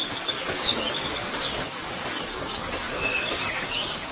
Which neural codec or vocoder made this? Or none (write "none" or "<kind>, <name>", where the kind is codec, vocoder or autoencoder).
codec, DAC